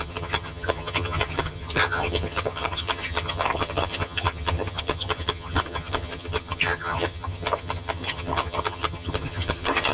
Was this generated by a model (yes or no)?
yes